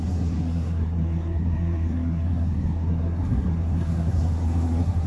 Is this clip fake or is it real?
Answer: fake